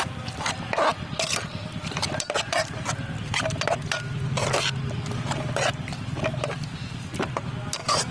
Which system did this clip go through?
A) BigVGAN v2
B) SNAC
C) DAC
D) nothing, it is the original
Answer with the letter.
D